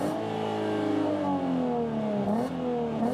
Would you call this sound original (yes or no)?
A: yes